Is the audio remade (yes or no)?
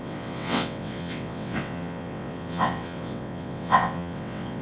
yes